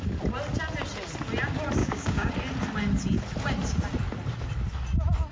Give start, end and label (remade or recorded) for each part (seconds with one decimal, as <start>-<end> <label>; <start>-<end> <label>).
0.0-1.8 recorded; 1.8-2.3 remade; 2.3-5.3 recorded